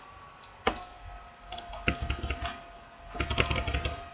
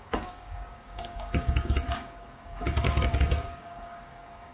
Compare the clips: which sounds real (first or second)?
first